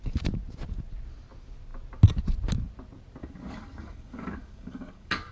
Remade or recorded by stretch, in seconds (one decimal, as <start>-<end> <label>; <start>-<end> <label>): 0.0-3.2 recorded; 3.2-5.3 remade

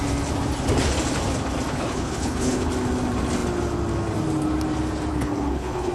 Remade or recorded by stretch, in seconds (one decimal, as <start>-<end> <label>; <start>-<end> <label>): 0.0-1.7 recorded; 1.7-2.7 remade; 2.7-5.1 recorded; 5.1-5.9 remade

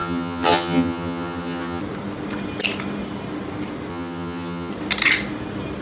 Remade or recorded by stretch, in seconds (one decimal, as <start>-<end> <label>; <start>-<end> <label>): 0.0-1.8 remade; 1.8-3.9 recorded; 3.9-4.7 remade; 4.7-5.8 recorded

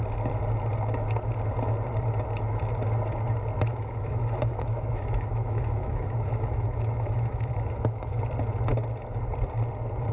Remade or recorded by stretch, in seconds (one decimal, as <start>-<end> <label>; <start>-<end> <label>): 0.0-3.7 recorded; 3.7-8.2 remade; 8.2-10.1 recorded

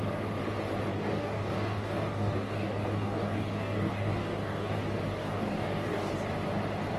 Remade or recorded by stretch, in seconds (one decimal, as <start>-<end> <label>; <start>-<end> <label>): 0.0-0.9 recorded; 0.9-4.8 remade; 4.8-5.2 recorded; 5.2-6.1 remade; 6.1-7.0 recorded

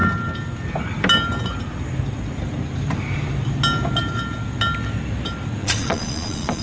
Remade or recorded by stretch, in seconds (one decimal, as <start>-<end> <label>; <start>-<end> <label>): 0.0-5.6 recorded; 5.6-6.6 remade

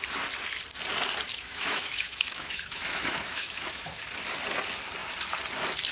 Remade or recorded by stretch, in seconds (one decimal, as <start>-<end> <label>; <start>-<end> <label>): 0.0-1.3 recorded; 1.3-4.0 remade; 4.0-5.9 recorded